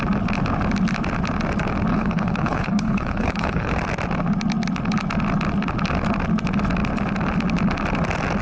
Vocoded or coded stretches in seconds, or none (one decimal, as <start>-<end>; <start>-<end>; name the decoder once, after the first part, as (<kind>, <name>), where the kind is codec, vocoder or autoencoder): 1.9-3.7 (codec, HILCodec)